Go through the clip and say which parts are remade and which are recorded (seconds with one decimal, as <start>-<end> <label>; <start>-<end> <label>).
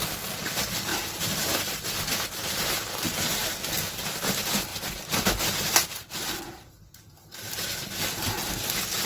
0.0-0.9 recorded; 0.9-2.6 remade; 2.6-4.7 recorded; 4.7-5.4 remade; 5.4-9.1 recorded